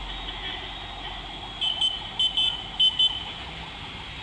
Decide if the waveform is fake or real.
real